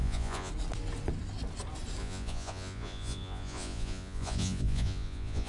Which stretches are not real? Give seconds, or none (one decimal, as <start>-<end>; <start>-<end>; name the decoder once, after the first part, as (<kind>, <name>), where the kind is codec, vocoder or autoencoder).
0.0-0.5 (vocoder, Vocos); 2.0-5.5